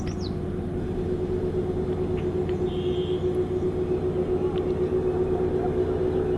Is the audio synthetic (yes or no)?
no